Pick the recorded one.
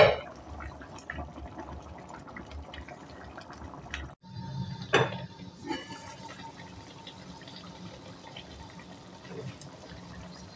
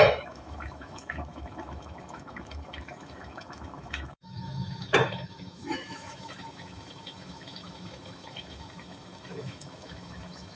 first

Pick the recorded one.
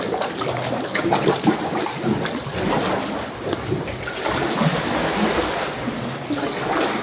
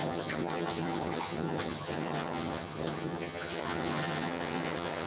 first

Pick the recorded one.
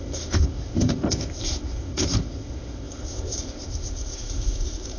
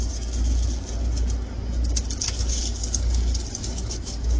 second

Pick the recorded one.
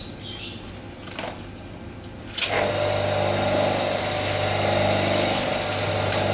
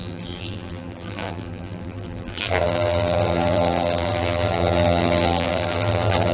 first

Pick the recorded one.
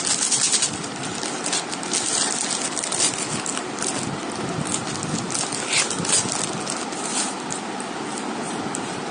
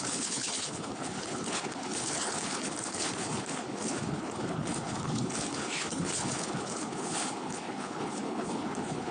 first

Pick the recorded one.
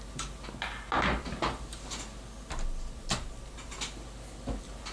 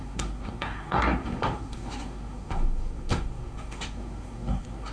first